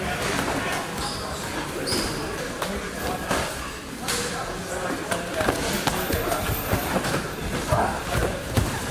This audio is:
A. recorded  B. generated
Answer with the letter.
A